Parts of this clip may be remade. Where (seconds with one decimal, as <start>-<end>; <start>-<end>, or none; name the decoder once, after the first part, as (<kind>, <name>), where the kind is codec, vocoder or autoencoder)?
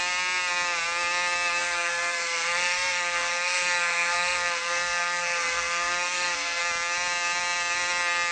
1.6-6.6 (codec, SNAC)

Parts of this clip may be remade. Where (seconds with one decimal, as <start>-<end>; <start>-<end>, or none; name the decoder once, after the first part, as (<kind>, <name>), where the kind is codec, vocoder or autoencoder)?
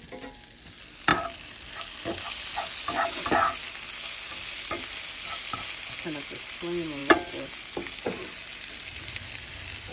7.0-8.0 (vocoder, BigVGAN v2)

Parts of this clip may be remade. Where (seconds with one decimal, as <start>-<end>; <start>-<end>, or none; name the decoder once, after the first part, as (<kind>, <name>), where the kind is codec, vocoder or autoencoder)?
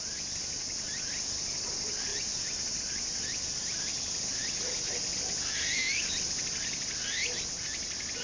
none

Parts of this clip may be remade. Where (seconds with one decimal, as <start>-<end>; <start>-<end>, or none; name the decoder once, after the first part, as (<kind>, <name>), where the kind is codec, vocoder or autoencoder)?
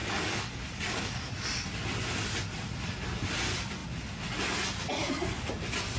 0.0-1.3 (codec, DAC)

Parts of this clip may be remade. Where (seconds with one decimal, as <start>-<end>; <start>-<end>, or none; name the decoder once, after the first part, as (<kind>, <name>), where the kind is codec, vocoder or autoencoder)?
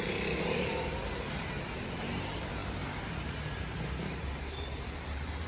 0.0-5.5 (vocoder, BigVGAN v2)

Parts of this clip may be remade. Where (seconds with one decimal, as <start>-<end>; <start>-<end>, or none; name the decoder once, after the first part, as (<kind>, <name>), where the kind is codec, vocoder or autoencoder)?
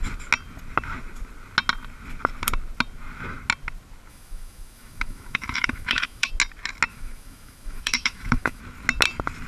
4.1-6.3 (autoencoder, DAC-VAE); 6.9-8.6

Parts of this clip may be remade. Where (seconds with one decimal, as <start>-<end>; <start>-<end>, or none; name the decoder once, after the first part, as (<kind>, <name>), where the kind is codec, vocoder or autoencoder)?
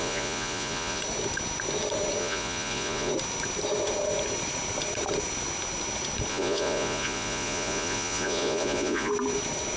0.0-1.0 (vocoder, Vocos); 2.2-3.1; 6.3-9.1